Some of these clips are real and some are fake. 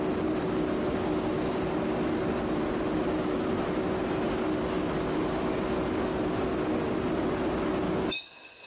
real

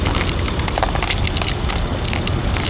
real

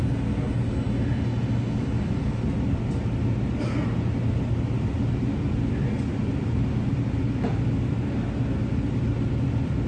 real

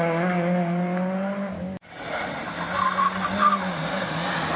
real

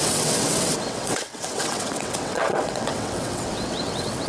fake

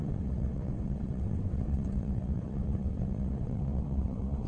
fake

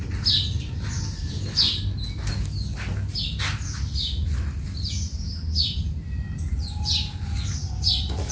real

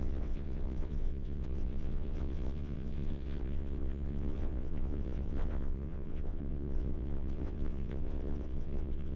fake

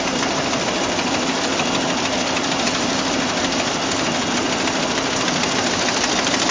real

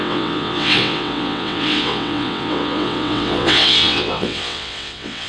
fake